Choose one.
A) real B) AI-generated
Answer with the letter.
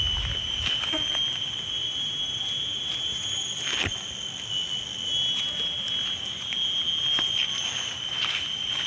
A